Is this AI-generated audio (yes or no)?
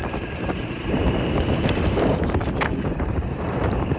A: yes